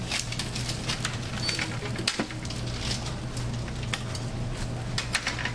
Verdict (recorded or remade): recorded